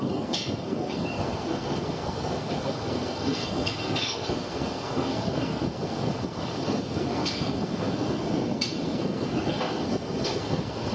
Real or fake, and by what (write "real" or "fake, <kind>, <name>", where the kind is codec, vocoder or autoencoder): fake, codec, SNAC